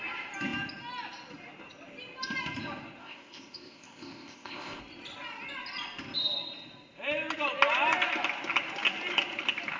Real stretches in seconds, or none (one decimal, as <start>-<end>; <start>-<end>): 0.0-3.0; 4.8-9.8